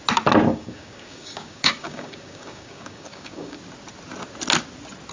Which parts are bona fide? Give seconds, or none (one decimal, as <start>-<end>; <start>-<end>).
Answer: 0.0-0.5; 3.6-5.1